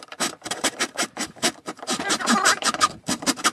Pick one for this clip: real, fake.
fake